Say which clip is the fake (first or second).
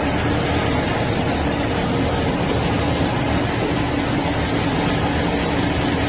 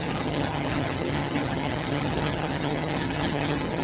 second